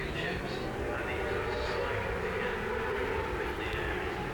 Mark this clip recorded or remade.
recorded